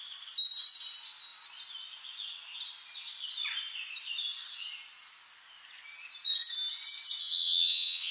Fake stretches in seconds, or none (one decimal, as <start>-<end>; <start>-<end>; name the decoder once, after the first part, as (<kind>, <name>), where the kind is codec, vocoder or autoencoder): 7.2-8.1 (vocoder, WaveNeXt)